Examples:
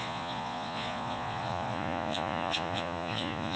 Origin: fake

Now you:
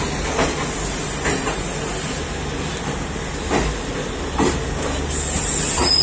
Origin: real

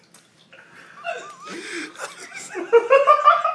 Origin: real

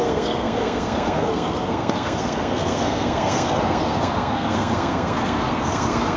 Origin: fake